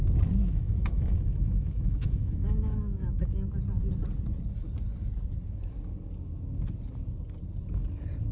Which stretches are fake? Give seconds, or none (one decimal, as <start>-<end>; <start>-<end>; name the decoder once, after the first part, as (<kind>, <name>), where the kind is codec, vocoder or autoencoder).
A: 0.4-3.3 (autoencoder, DAC-VAE)